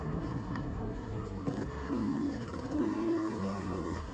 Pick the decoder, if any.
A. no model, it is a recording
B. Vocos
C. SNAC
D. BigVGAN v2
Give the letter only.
C